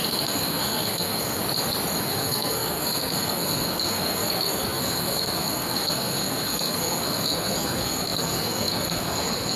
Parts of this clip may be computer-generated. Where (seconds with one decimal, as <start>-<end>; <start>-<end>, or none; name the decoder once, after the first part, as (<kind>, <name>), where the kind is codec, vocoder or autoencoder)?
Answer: 0.0-1.4 (codec, SNAC); 2.0-9.6